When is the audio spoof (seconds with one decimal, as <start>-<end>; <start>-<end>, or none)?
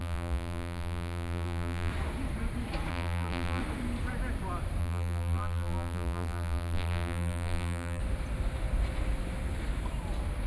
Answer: 0.0-1.9; 2.9-3.6; 4.8-8.0